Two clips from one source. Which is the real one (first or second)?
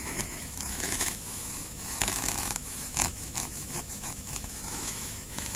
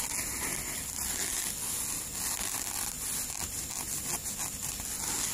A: second